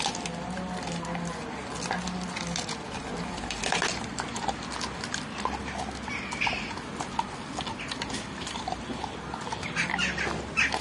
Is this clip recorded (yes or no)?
yes